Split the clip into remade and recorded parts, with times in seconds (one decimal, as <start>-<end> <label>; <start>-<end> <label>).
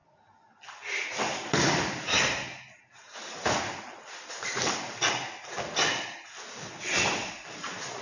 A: 0.0-8.0 recorded